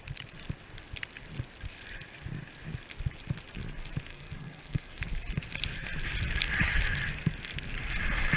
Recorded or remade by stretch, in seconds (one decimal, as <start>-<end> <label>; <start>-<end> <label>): 0.0-4.1 recorded; 4.1-5.0 remade; 5.0-8.4 recorded